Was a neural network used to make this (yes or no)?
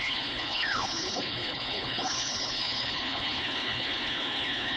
yes